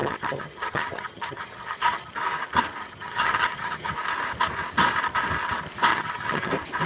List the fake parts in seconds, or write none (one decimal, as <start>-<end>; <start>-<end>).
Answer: 0.0-2.1; 2.8-3.9; 5.9-6.5